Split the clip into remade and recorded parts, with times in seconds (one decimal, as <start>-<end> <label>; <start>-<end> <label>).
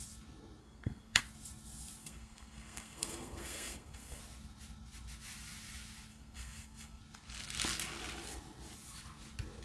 0.0-0.6 recorded; 0.6-1.2 remade; 1.2-2.0 recorded; 2.0-4.2 remade; 4.2-6.1 recorded; 6.1-7.0 remade; 7.0-9.6 recorded